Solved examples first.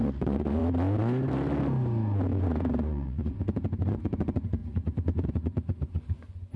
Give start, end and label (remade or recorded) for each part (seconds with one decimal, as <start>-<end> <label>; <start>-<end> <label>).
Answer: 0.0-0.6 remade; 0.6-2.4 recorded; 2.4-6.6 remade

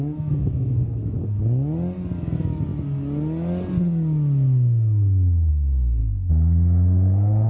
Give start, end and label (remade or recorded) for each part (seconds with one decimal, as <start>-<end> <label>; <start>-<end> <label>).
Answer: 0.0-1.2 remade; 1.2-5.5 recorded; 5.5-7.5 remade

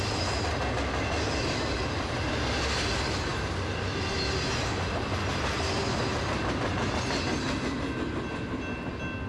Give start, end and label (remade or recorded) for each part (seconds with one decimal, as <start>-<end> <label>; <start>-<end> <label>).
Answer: 0.0-9.3 recorded

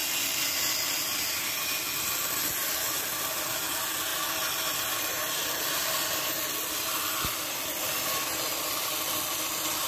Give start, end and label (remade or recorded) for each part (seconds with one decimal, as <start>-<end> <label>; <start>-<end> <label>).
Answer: 0.0-9.9 recorded

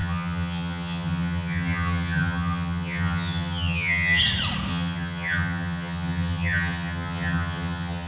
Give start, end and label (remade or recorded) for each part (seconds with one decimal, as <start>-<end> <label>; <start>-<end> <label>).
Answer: 0.0-4.2 remade; 4.2-4.7 recorded; 4.7-8.1 remade

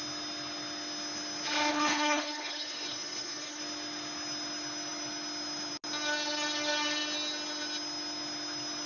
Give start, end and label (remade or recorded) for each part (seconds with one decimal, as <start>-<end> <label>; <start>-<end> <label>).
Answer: 0.0-1.7 recorded; 1.7-3.6 remade; 3.6-8.9 recorded